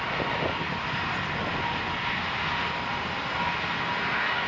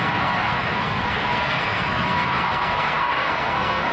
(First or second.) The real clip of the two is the first